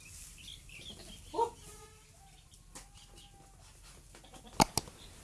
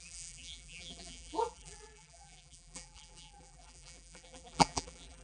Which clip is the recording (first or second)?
first